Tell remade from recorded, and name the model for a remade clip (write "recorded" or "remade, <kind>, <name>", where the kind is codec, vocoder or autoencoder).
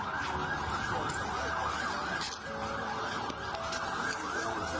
recorded